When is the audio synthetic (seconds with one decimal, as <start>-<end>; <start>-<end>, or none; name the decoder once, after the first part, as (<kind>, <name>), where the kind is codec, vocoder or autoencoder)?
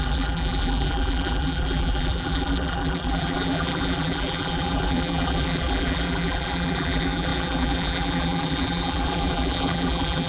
0.0-10.3 (vocoder, BigVGAN v2)